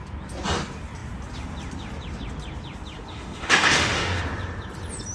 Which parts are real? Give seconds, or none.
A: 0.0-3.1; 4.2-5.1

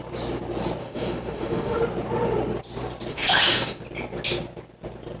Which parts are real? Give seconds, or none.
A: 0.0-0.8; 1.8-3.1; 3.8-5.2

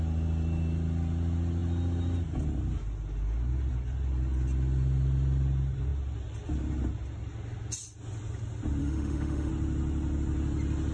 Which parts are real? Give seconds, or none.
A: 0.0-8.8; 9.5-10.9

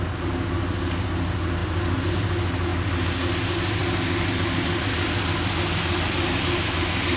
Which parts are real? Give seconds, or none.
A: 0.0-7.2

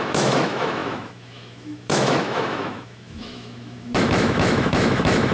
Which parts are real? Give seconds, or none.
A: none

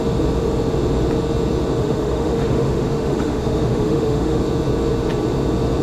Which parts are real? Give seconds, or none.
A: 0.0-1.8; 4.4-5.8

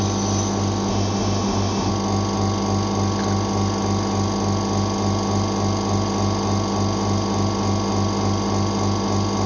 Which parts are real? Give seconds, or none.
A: 0.0-0.9; 1.9-9.5